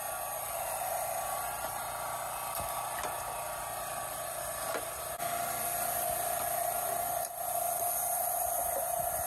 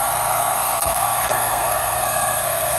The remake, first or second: second